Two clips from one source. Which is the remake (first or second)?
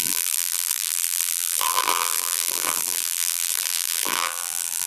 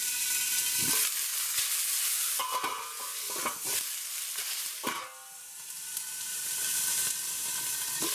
first